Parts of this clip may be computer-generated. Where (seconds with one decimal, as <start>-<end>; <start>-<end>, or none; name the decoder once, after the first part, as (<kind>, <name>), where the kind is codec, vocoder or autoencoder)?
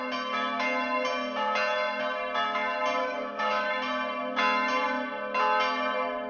3.0-3.7 (codec, DAC)